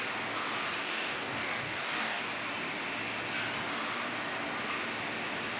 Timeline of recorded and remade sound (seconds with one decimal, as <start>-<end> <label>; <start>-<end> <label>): 0.0-0.8 recorded; 0.8-2.2 remade; 2.2-5.6 recorded

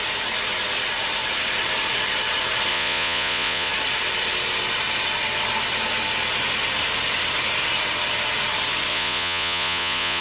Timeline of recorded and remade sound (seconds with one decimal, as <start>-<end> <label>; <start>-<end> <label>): 0.0-2.7 recorded; 2.7-3.7 remade; 3.7-8.9 recorded; 8.9-10.2 remade

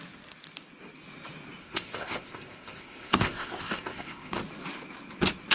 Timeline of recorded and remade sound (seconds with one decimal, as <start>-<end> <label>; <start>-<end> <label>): 0.0-1.6 recorded; 1.6-4.4 remade; 4.4-5.5 recorded

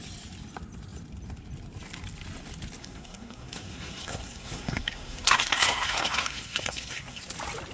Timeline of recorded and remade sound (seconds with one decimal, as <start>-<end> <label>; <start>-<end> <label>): 0.0-2.8 recorded; 2.8-7.2 remade; 7.2-7.7 recorded

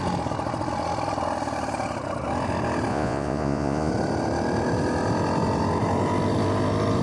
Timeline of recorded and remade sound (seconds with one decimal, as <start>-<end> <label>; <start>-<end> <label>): 0.0-2.9 recorded; 2.9-3.9 remade; 3.9-7.0 recorded

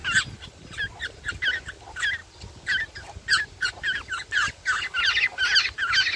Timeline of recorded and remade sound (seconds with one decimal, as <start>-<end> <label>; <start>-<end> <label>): 0.0-6.2 recorded

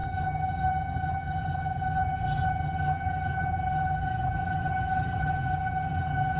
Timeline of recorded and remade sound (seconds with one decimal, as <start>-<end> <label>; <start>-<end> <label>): 0.0-6.4 remade